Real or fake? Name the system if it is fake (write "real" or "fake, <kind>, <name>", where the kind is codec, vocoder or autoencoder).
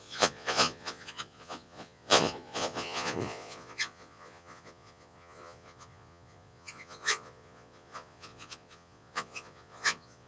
fake, vocoder, Vocos